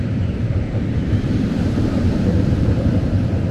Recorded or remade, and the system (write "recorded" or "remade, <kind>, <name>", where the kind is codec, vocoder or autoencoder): remade, vocoder, BigVGAN v2